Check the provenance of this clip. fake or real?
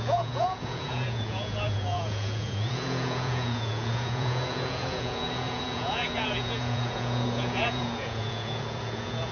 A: fake